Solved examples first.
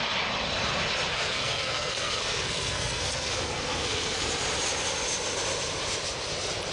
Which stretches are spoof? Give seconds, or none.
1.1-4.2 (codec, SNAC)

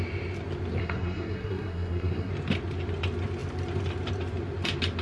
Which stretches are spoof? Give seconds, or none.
0.8-2.3 (codec, SNAC)